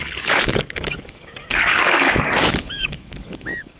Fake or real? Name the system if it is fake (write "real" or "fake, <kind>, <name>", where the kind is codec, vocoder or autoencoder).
fake, codec, DAC